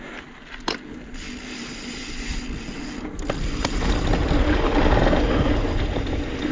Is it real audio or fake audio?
real